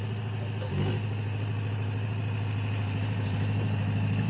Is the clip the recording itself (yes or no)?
yes